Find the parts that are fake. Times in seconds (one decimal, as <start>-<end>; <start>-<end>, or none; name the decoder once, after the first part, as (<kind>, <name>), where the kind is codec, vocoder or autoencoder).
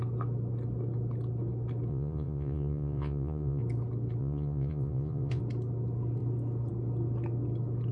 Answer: 1.9-3.6 (vocoder, Vocos); 4.2-5.4